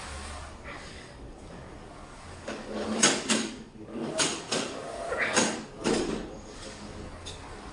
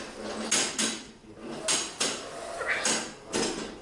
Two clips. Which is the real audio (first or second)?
second